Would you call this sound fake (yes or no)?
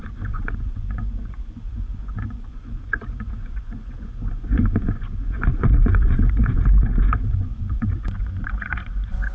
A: yes